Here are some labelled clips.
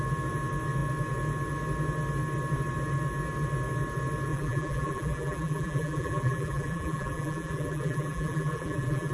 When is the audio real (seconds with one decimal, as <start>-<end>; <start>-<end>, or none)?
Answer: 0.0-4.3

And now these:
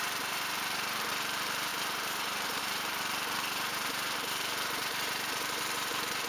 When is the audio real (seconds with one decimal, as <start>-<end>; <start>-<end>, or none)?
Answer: none

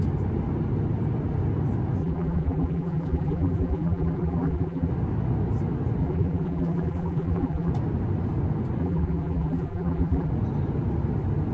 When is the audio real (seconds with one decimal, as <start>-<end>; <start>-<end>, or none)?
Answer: 0.0-2.0; 4.9-6.0; 7.7-8.8; 10.3-11.5